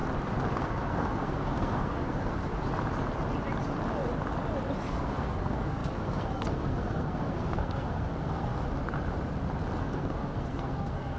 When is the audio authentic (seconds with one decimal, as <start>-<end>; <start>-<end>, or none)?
0.0-0.5; 2.5-4.9; 8.5-9.8

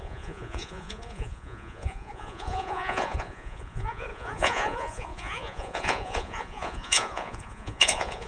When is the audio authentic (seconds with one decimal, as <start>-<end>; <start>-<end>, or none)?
none